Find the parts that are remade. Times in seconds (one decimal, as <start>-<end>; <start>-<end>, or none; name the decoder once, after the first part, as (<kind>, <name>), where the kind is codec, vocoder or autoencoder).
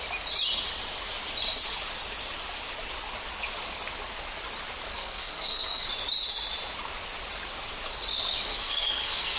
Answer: 4.9-5.9 (codec, SNAC); 8.5-9.4